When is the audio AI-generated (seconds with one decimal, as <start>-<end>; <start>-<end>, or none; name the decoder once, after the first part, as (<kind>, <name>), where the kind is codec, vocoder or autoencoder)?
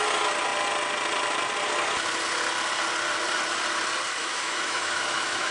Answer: 4.2-5.5 (autoencoder, DAC-VAE)